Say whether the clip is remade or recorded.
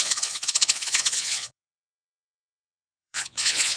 remade